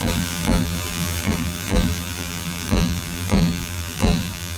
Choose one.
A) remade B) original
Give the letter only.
A